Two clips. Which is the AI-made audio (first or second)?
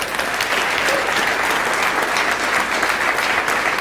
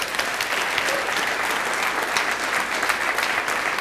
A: second